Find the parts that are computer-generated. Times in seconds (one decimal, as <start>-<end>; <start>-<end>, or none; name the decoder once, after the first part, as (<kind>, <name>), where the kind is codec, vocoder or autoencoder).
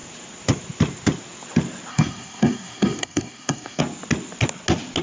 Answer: 1.9-3.8 (codec, SNAC)